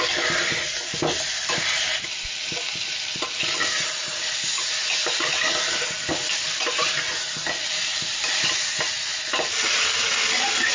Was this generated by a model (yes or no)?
no